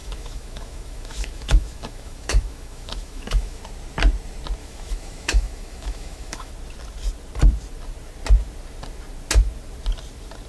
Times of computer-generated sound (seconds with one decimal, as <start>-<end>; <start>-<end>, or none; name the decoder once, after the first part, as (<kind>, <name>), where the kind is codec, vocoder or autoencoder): 0.0-3.6 (autoencoder, DAC-VAE); 4.6-6.5